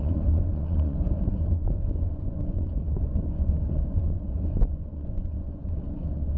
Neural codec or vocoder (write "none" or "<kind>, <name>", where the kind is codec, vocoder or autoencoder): vocoder, Vocos